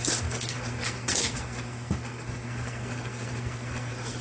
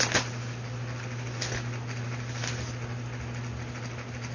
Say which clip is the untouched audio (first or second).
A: second